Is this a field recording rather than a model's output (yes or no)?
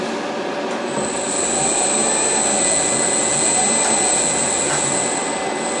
yes